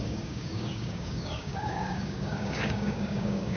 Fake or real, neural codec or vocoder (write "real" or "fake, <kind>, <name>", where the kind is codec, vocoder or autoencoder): fake, codec, DAC